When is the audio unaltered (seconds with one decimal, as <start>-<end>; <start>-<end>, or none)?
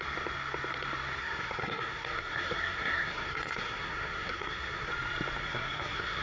0.0-1.2; 4.9-5.4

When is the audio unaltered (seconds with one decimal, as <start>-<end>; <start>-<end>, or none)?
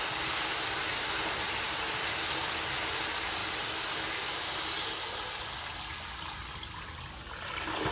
0.0-7.9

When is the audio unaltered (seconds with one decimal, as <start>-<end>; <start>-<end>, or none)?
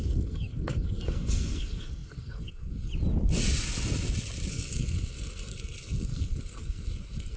2.9-4.5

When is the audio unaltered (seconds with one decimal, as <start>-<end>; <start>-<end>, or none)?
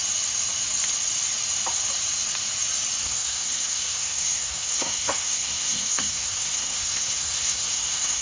0.0-3.0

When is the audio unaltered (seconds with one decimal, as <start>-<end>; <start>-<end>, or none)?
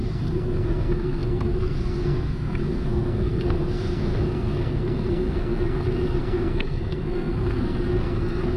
none